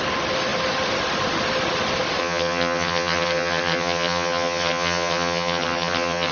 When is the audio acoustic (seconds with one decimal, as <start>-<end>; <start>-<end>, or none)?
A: 0.0-2.2

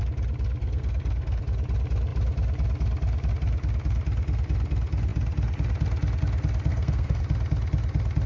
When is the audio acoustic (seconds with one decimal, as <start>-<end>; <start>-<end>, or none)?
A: 0.0-0.6; 1.4-6.7; 7.2-8.3

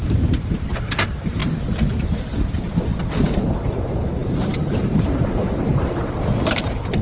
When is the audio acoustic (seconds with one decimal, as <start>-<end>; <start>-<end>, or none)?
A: 1.4-3.4

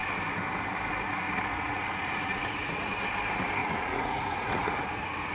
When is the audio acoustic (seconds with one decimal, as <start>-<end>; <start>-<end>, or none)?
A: 0.0-1.5; 2.9-3.6